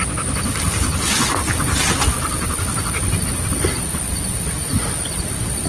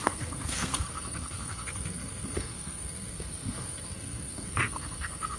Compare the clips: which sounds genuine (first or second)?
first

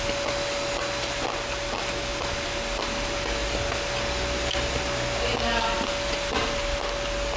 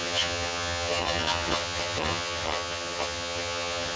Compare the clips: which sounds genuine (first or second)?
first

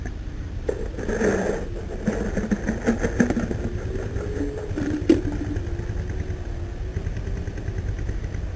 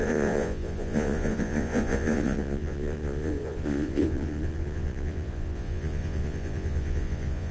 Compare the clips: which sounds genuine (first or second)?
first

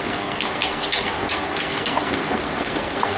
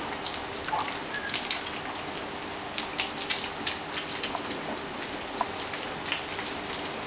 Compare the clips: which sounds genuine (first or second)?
second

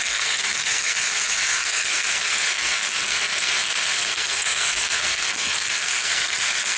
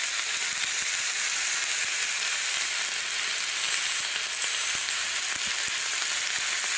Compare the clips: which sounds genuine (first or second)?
second